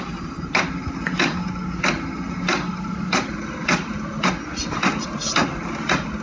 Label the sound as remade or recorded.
recorded